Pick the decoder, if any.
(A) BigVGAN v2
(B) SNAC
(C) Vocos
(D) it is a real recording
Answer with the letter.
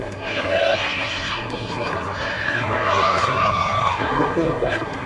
B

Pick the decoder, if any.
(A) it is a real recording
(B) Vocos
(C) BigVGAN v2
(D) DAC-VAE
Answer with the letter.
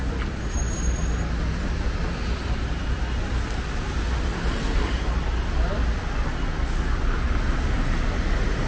A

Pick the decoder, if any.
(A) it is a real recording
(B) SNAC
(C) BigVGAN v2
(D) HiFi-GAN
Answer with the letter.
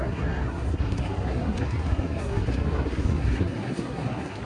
B